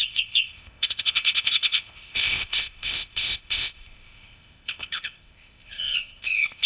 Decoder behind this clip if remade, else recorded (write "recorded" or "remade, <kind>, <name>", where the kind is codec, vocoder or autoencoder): remade, codec, ZipCodec